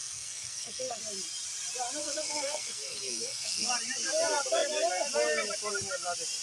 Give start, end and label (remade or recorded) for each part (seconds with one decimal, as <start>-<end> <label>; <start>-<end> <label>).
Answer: 0.0-1.0 remade; 1.0-2.0 recorded; 2.0-3.7 remade; 3.7-6.4 recorded